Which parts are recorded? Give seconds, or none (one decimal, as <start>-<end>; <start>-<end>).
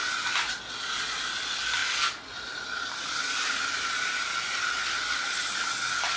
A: 0.0-1.8; 5.5-6.2